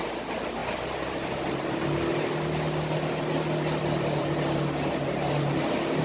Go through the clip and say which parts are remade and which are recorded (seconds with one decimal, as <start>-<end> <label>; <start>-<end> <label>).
0.0-6.0 recorded